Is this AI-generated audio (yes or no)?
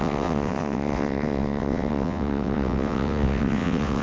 yes